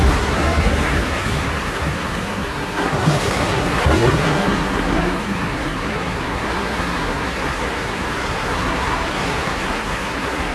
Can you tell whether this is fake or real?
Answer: fake